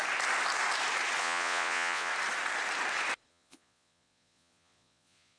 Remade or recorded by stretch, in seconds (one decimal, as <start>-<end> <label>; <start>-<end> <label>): 0.0-1.2 recorded; 1.2-2.1 remade; 2.1-3.3 recorded; 3.3-5.4 remade